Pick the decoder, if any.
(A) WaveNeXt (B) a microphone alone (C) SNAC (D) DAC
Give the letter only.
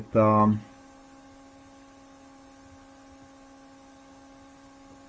B